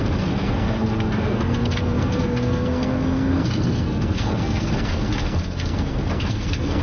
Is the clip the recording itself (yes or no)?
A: no